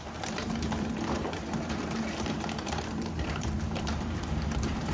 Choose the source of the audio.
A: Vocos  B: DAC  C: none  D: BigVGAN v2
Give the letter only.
D